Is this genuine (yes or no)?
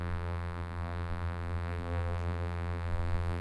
no